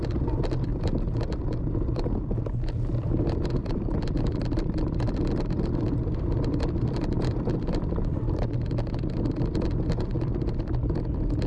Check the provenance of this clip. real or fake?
fake